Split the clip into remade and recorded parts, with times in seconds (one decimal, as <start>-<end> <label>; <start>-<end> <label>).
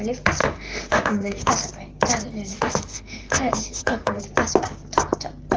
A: 0.0-0.4 recorded; 0.4-1.5 remade; 1.5-2.5 recorded; 2.5-4.2 remade; 4.2-5.6 recorded